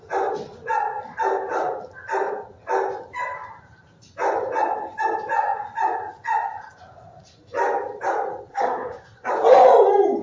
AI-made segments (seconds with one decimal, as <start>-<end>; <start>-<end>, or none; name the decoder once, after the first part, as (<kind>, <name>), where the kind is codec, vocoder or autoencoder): 8.5-9.3 (codec, SNAC)